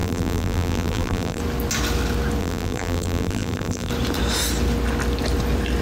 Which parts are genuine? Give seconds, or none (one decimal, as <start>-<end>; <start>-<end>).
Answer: 1.4-2.4; 3.9-5.8